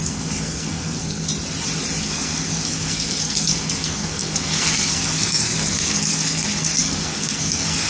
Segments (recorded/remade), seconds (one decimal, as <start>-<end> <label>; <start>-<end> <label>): 0.0-1.3 remade; 1.3-2.0 recorded; 2.0-7.9 remade